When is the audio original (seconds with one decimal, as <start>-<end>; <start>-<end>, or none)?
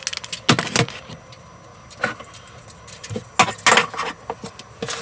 0.0-5.0